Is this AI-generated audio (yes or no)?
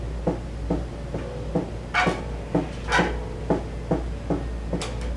no